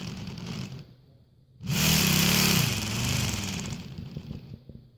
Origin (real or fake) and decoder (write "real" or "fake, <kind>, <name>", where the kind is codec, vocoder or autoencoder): fake, vocoder, BigVGAN v2